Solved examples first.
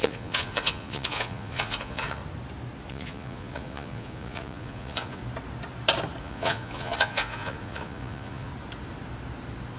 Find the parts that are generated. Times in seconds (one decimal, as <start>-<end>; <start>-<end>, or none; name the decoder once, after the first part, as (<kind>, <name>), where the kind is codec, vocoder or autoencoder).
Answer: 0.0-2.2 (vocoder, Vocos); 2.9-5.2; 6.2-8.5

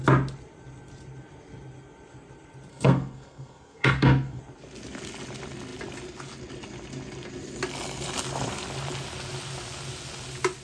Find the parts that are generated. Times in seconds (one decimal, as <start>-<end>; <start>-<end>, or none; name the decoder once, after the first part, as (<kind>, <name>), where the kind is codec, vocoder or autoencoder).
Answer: 2.7-4.4 (codec, SNAC)

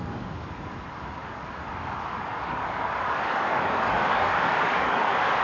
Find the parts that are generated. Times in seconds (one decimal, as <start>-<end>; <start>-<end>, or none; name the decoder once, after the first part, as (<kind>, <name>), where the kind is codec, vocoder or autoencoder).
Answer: 0.0-5.4 (codec, DAC)